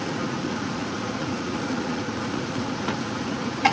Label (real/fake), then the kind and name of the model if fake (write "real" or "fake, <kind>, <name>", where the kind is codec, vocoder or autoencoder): fake, vocoder, Vocos